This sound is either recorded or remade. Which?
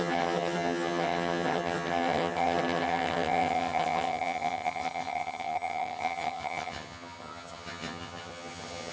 remade